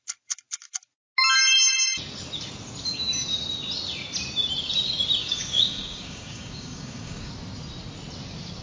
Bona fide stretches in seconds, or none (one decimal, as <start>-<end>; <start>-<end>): 0.0-5.2; 7.3-8.6